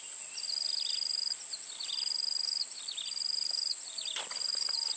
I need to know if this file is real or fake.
real